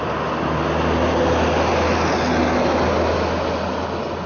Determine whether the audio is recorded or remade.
recorded